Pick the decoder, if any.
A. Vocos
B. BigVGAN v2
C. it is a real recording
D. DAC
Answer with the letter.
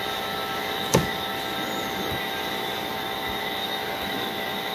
C